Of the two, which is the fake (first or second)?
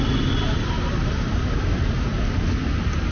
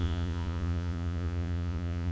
second